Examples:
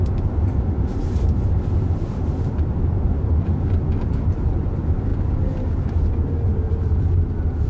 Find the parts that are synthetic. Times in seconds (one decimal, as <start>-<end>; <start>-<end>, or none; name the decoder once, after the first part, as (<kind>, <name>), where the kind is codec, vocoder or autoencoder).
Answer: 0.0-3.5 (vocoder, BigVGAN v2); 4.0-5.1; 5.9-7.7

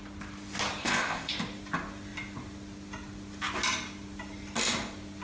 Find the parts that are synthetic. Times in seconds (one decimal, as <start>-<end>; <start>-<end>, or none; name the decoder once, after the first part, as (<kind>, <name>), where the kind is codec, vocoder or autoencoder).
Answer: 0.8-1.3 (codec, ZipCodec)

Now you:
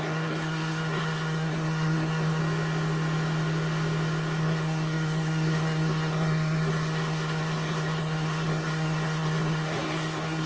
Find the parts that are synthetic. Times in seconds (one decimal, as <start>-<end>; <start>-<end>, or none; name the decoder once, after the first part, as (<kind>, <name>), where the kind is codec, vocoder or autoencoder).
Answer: 0.0-2.4 (codec, SNAC); 4.4-10.5